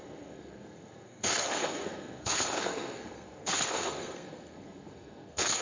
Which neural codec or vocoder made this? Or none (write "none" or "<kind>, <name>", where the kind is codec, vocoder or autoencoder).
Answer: codec, SNAC